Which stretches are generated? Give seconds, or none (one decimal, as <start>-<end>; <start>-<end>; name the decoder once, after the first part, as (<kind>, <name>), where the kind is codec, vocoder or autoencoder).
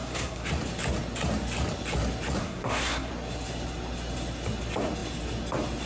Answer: 0.0-0.5 (codec, SNAC); 2.4-3.1